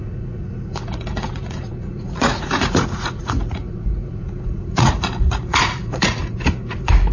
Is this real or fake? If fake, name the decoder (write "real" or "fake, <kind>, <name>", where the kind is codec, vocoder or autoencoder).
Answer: fake, vocoder, Vocos